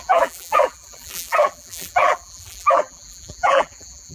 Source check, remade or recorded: remade